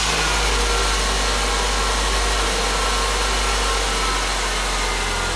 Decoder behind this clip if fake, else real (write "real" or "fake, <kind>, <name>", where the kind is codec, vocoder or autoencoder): real